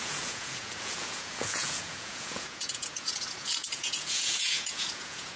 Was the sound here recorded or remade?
remade